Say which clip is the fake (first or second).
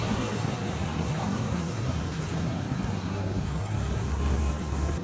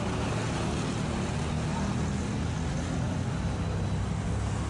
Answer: first